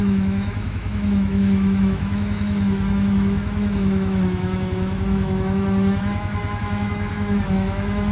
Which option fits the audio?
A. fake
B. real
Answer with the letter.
A